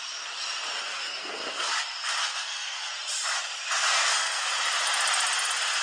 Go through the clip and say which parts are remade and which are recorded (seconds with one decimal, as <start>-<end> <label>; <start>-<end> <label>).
0.0-0.9 recorded; 0.9-1.7 remade; 1.7-2.2 recorded; 2.2-2.9 remade; 2.9-3.8 recorded; 3.8-4.5 remade; 4.5-5.8 recorded